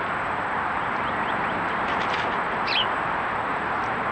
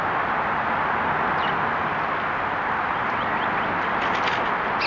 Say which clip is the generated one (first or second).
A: first